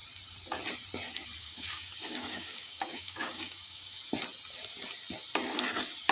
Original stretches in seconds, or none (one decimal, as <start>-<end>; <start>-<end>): 0.0-1.4; 4.0-6.1